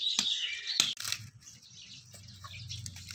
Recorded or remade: recorded